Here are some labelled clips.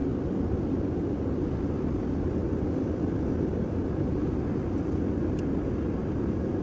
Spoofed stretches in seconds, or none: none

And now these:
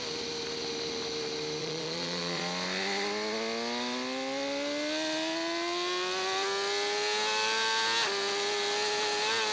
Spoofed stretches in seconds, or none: 1.6-2.4 (vocoder, Vocos)

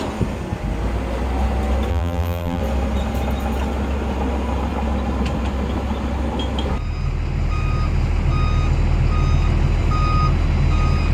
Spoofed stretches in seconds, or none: 1.9-2.6 (vocoder, BigVGAN v2)

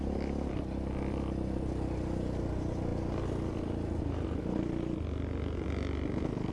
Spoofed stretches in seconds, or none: none

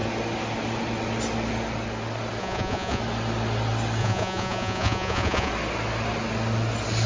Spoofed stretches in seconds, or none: 2.4-3.0 (vocoder, Vocos); 4.0-5.5